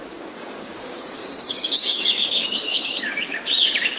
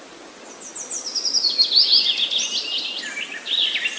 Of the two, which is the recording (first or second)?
second